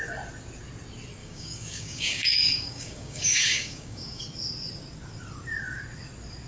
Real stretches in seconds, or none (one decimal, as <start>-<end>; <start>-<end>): 0.0-1.2; 4.2-6.5